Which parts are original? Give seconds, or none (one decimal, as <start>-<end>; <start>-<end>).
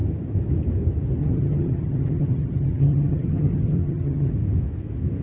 0.0-1.2; 4.3-5.2